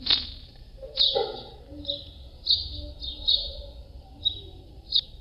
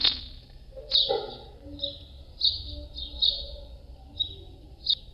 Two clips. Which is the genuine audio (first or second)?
second